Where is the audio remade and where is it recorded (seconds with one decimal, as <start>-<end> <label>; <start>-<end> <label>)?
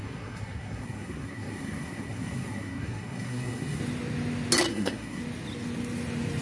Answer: 0.0-3.8 remade; 3.8-4.7 recorded; 4.7-5.2 remade; 5.2-6.4 recorded